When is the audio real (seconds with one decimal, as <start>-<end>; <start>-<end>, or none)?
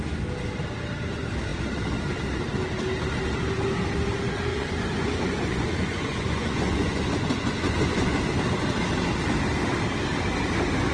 0.0-4.5; 8.2-10.9